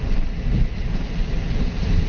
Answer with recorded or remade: recorded